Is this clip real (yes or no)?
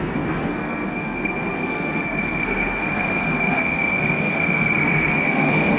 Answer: no